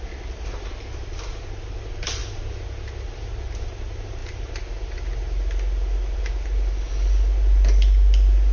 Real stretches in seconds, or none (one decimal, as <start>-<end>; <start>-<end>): 0.0-8.5